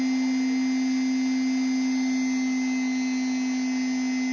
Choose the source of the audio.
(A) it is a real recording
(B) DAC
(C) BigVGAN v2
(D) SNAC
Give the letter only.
A